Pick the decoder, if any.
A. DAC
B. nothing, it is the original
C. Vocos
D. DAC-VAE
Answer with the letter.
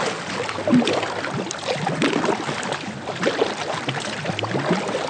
B